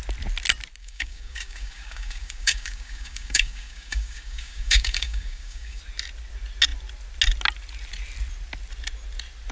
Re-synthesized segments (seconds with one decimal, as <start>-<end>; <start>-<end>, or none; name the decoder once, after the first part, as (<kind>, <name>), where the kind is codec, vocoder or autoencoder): 0.8-5.8 (codec, DAC)